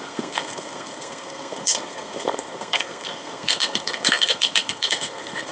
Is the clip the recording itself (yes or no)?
no